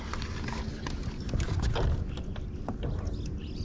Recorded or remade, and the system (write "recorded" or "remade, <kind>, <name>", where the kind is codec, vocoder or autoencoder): recorded